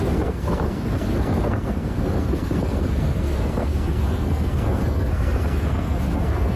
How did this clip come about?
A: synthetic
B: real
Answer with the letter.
A